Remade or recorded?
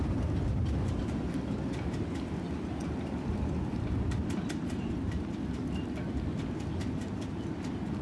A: remade